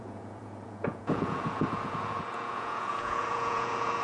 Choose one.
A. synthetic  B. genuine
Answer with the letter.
A